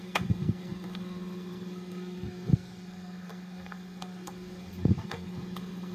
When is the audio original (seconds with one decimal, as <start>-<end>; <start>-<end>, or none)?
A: none